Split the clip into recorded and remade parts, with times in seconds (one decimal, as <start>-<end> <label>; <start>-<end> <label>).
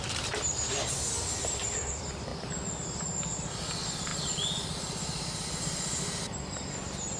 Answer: 0.0-7.2 recorded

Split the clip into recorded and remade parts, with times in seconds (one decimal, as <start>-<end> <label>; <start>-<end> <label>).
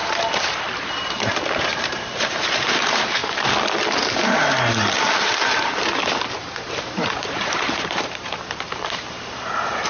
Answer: 0.0-1.6 recorded; 1.6-3.2 remade; 3.2-6.3 recorded; 6.3-9.9 remade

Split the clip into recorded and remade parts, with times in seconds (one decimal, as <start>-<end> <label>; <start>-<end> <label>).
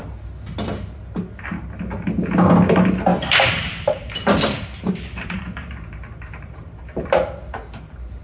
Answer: 0.0-3.1 recorded; 3.1-8.2 remade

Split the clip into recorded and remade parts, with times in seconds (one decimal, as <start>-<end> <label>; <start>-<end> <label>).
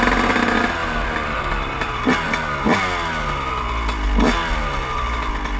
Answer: 0.0-0.8 recorded; 0.8-2.1 remade; 2.1-4.4 recorded; 4.4-5.6 remade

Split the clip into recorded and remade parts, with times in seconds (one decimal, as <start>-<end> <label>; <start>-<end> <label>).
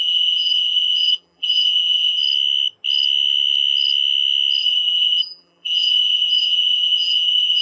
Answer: 0.0-2.2 remade; 2.2-4.6 recorded; 4.6-7.6 remade